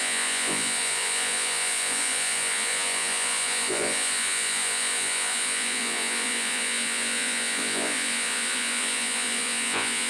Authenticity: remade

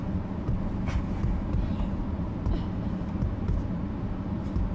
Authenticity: recorded